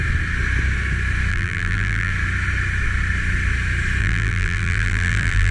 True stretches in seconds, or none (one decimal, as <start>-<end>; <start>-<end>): 0.0-1.3; 2.1-4.0